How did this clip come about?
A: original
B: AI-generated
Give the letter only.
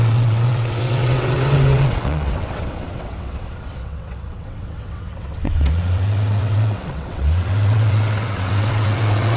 B